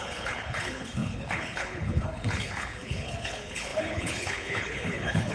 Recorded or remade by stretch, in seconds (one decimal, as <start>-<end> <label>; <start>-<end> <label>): 0.0-5.3 remade